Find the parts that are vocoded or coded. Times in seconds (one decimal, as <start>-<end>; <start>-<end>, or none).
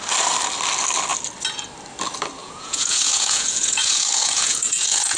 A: 2.4-5.2